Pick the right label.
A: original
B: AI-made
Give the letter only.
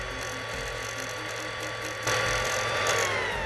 A